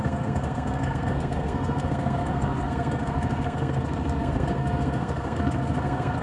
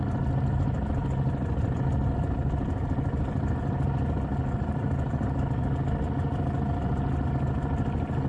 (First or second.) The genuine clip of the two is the second